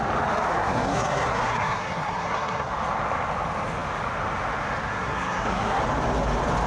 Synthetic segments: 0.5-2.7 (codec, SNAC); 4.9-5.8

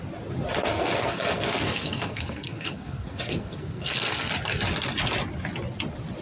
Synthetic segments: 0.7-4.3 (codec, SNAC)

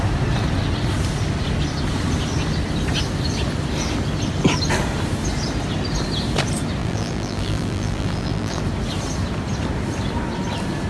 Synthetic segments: 6.8-8.6 (vocoder, BigVGAN v2)